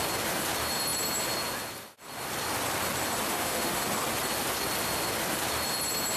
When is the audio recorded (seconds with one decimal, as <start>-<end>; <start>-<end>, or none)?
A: 0.0-3.3; 3.8-6.2